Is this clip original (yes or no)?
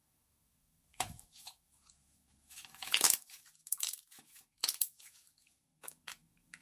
no